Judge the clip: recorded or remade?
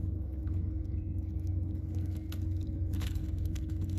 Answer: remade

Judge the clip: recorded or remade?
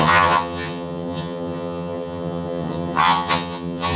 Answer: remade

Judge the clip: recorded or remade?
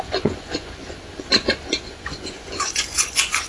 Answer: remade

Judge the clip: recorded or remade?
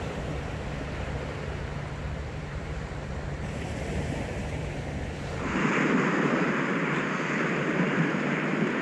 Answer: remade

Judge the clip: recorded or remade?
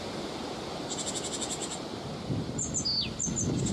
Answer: recorded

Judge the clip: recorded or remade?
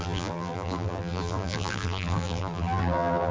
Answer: remade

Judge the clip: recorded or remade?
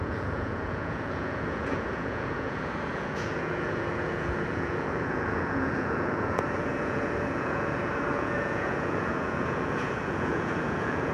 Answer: remade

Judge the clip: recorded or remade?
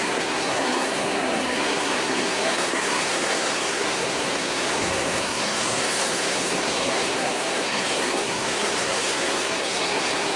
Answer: remade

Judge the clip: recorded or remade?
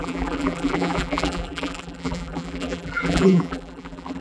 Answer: remade